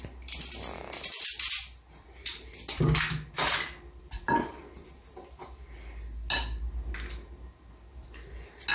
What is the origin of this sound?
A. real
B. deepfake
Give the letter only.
A